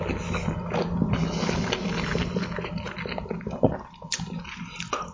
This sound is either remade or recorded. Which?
recorded